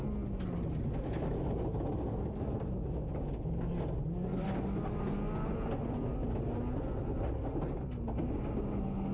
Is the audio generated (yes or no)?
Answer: no